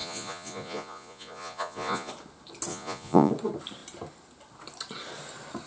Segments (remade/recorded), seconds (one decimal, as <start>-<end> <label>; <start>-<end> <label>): 0.0-2.1 remade; 2.1-2.7 recorded; 2.7-3.3 remade; 3.3-5.7 recorded